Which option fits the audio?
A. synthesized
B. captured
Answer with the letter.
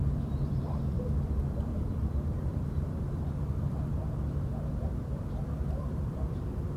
A